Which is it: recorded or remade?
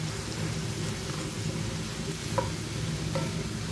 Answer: recorded